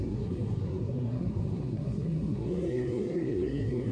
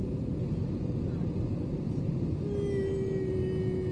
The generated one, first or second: first